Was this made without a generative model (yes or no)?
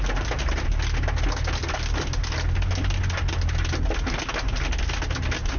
yes